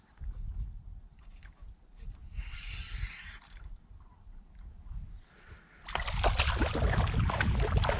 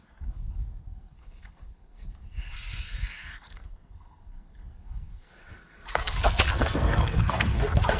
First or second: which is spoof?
second